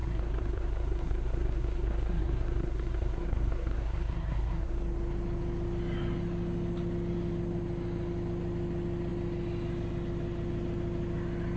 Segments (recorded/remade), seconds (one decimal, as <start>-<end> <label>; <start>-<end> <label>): 0.0-4.8 remade; 4.8-11.6 recorded